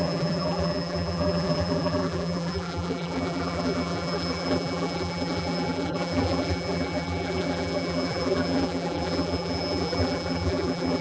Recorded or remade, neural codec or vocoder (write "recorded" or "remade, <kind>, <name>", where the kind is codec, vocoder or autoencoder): remade, vocoder, BigVGAN v2